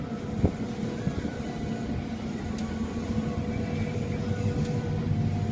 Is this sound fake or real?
real